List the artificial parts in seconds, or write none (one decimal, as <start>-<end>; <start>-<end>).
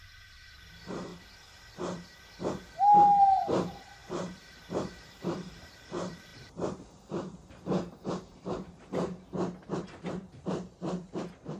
0.0-1.1; 3.2-11.6